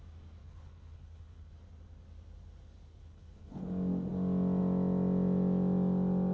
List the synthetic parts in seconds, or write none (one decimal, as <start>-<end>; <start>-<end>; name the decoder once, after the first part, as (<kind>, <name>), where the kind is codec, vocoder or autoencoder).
0.4-1.5 (codec, HILCodec); 3.0-3.6